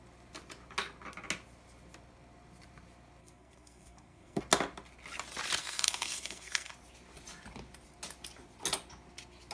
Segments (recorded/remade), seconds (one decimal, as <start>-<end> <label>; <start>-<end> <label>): 0.0-3.2 recorded; 3.2-4.4 remade; 4.4-5.6 recorded; 5.6-6.7 remade; 6.7-9.5 recorded